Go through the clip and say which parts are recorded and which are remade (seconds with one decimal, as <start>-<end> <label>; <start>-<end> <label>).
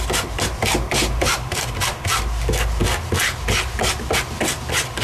0.0-5.0 recorded